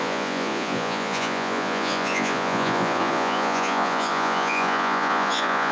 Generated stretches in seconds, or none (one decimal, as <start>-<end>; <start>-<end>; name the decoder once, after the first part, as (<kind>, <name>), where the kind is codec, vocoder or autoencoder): 0.0-5.7 (vocoder, Vocos)